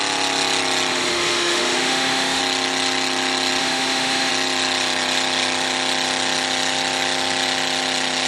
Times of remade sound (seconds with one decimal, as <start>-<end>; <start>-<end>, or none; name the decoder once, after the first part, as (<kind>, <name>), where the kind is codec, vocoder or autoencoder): 0.9-2.4 (autoencoder, DAC-VAE); 3.6-4.3